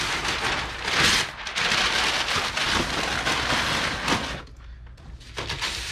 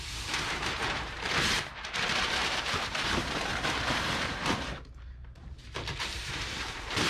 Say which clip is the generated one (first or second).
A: second